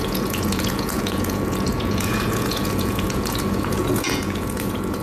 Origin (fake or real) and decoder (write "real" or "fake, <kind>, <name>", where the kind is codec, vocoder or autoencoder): fake, vocoder, Vocos